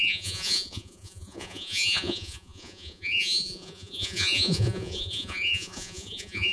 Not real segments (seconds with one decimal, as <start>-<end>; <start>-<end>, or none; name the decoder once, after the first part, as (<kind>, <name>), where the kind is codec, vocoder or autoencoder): 0.0-6.5 (vocoder, Vocos)